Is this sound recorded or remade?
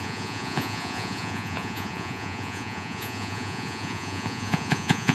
remade